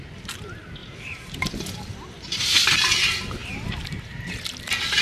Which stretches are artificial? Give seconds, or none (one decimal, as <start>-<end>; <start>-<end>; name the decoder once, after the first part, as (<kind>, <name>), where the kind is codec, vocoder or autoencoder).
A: 0.8-1.4 (vocoder, BigVGAN v2); 3.4-4.4